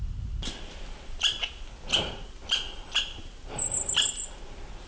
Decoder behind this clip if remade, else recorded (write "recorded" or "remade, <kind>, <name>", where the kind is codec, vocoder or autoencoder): recorded